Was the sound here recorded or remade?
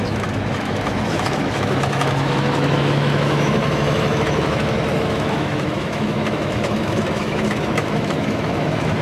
remade